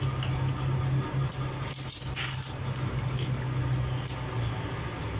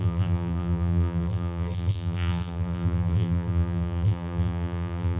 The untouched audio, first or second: first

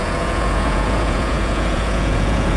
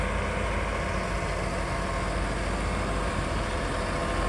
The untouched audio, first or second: second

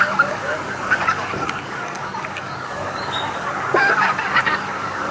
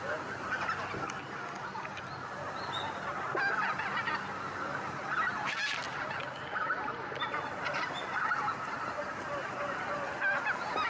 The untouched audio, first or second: second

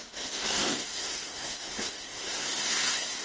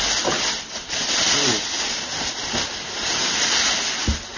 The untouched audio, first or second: second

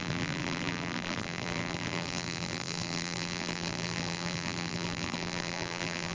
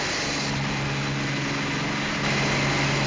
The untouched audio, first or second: second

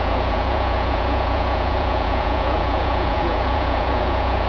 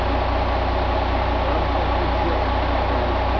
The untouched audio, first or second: second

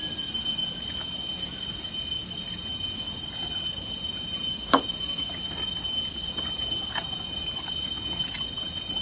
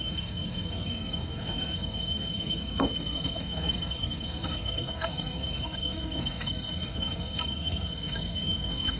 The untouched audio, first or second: first